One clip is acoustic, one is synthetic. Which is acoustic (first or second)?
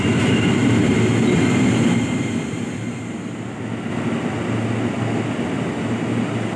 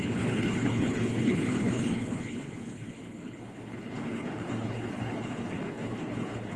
first